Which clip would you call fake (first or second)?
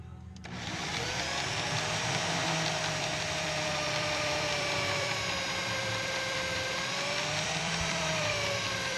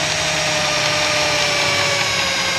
first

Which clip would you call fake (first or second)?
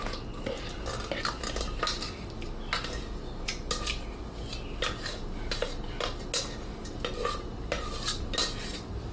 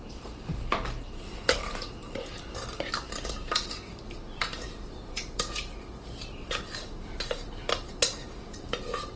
second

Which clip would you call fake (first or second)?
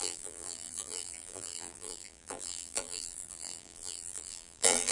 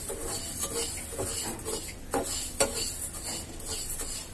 first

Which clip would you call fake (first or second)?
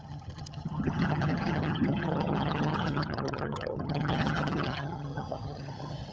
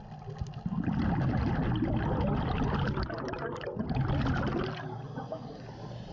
first